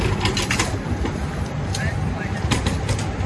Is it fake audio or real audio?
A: fake